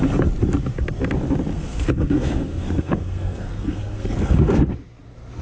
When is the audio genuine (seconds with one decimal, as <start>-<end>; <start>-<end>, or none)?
0.0-1.5; 4.7-5.4